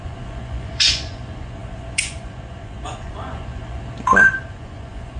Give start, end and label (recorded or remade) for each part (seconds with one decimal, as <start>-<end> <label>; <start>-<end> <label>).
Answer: 0.0-5.2 remade